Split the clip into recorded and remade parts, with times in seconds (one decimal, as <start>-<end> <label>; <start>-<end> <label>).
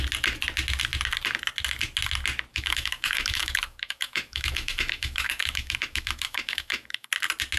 0.0-2.5 recorded; 2.5-7.1 remade; 7.1-7.6 recorded